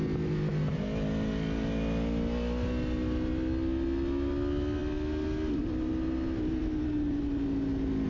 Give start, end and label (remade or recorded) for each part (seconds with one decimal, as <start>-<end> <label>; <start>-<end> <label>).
0.0-8.1 recorded

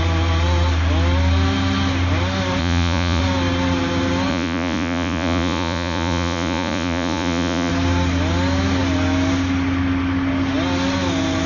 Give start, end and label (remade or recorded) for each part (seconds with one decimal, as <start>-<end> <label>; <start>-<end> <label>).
0.0-2.6 recorded; 2.6-3.2 remade; 3.2-4.3 recorded; 4.3-7.7 remade; 7.7-11.5 recorded

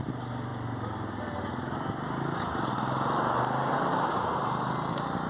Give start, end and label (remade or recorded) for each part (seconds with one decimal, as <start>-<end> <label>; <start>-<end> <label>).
0.0-5.3 recorded

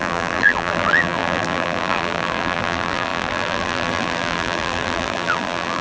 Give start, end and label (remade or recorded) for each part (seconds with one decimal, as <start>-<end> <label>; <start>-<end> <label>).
0.0-5.8 remade